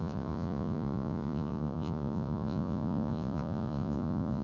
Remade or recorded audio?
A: remade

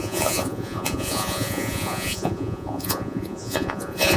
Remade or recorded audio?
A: remade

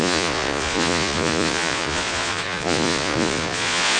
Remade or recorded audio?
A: remade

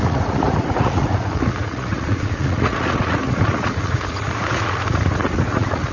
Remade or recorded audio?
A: remade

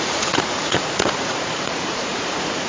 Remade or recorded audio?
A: remade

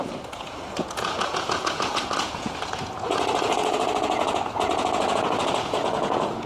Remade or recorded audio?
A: remade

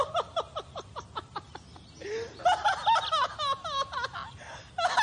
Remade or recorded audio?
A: recorded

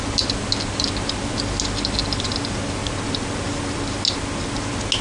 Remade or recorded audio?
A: recorded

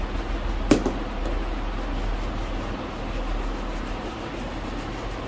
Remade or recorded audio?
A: recorded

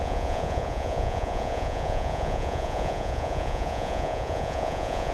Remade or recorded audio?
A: remade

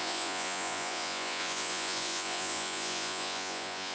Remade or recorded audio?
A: remade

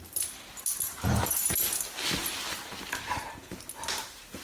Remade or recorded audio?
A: recorded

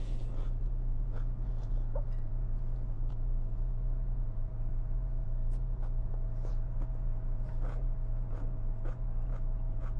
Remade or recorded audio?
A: remade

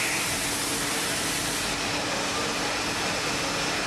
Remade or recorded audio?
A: recorded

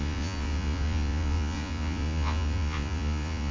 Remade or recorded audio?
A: remade